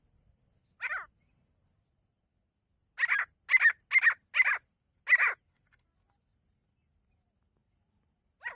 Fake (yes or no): no